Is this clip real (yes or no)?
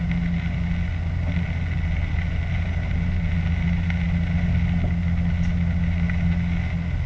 yes